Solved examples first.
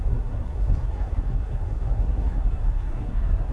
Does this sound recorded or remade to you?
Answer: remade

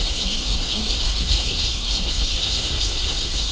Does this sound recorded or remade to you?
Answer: remade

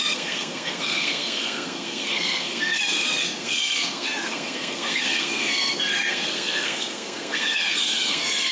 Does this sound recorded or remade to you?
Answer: remade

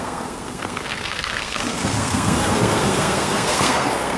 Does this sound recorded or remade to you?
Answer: remade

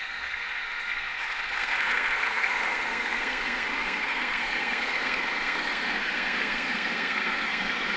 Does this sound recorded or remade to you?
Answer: remade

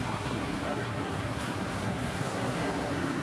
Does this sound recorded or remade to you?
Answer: remade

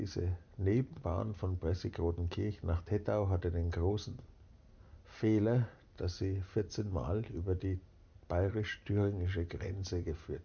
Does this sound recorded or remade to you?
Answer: recorded